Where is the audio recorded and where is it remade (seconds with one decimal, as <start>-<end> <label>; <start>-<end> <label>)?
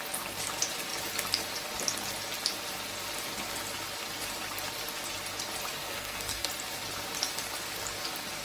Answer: 0.0-5.8 recorded; 5.8-6.5 remade; 6.5-8.4 recorded